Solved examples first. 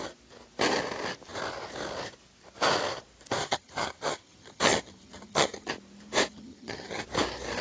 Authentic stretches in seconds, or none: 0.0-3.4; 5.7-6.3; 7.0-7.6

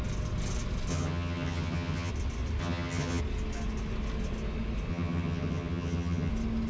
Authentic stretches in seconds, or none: 0.0-0.9; 2.1-2.6; 3.2-4.9; 6.3-6.7

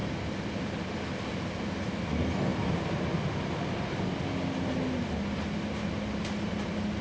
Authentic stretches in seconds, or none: 0.0-7.0

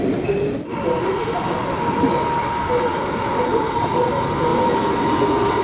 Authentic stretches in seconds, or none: 0.0-5.6